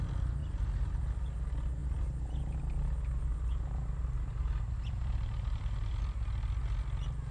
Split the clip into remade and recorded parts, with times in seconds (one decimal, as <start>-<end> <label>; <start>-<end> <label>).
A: 0.0-0.4 recorded; 0.4-1.0 remade; 1.0-1.8 recorded; 1.8-2.6 remade; 2.6-3.3 recorded; 3.3-6.0 remade; 6.0-7.3 recorded